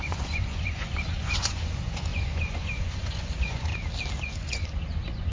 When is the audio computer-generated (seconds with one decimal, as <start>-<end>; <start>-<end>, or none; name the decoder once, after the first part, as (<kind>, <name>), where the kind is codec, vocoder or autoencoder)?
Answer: 0.0-3.7 (vocoder, Vocos); 4.2-5.3